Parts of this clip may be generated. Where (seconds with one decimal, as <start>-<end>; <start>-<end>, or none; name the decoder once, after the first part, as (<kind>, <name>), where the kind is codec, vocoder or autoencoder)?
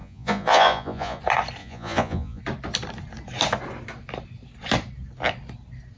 0.0-1.2 (vocoder, Vocos); 1.6-2.4